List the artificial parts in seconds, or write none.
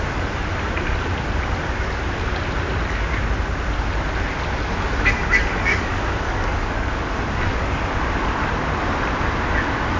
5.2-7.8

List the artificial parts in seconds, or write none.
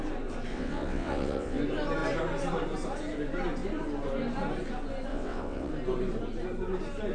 0.5-1.6; 5.1-5.7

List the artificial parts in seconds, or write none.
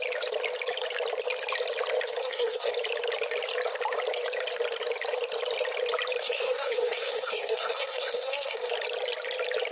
2.2-2.7; 6.2-8.7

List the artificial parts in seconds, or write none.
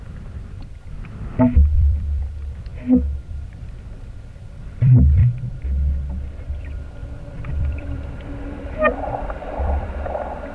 0.0-2.7; 3.3-5.2; 6.6-10.5